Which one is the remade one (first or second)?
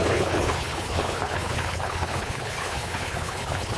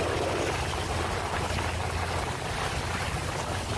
first